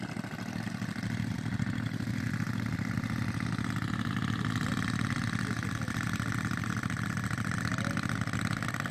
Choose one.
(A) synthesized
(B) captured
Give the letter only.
B